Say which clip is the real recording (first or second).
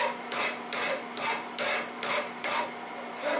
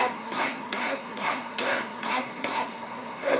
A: first